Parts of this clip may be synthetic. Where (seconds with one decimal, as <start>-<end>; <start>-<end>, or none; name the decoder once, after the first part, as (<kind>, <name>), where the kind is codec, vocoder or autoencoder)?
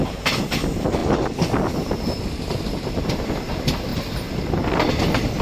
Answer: none